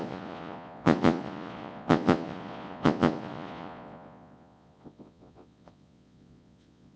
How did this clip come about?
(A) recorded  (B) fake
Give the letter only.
B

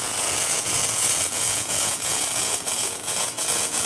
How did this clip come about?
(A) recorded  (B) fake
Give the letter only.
B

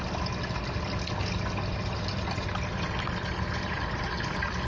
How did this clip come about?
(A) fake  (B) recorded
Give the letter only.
B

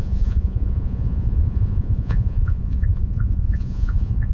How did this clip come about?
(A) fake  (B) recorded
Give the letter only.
A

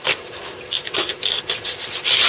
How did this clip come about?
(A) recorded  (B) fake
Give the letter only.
A